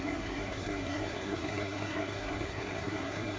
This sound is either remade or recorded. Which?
remade